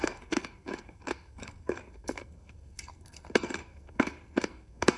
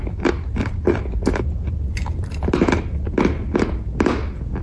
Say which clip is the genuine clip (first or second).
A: second